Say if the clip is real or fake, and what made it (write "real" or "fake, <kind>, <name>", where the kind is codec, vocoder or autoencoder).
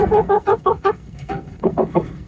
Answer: fake, codec, SNAC